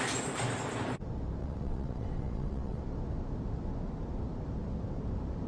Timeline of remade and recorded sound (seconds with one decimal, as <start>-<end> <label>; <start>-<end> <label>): 0.0-1.4 recorded; 1.4-2.8 remade; 2.8-5.5 recorded